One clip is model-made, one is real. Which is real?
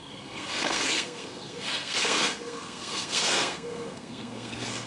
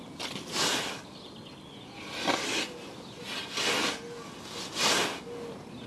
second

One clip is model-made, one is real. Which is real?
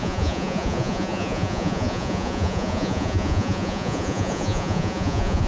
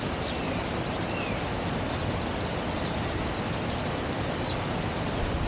second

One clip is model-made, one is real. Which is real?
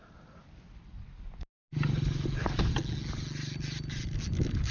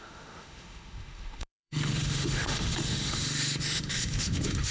first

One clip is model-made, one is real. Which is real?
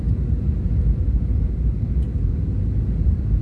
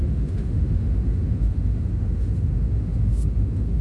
first